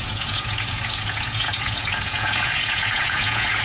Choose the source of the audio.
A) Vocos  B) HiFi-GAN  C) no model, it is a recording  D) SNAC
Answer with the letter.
A